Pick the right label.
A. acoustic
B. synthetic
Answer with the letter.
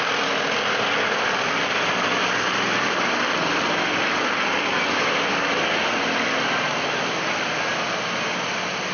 A